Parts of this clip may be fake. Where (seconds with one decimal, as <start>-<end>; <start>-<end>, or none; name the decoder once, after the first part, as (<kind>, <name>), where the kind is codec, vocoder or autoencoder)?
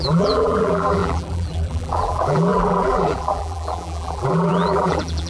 0.0-5.3 (vocoder, BigVGAN v2)